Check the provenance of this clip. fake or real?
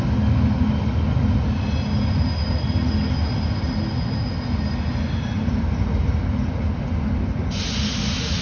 real